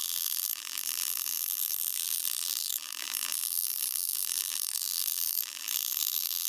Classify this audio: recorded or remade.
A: remade